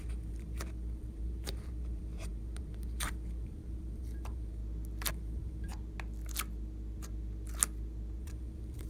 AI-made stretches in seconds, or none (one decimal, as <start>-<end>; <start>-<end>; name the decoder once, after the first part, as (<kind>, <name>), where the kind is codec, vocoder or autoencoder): 0.0-4.6 (vocoder, BigVGAN v2); 5.1-5.7; 8.2-8.9